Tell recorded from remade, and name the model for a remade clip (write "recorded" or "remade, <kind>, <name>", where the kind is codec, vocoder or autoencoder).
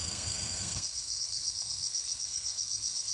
remade, codec, SNAC